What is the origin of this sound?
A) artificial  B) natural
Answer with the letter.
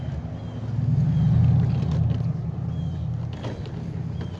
B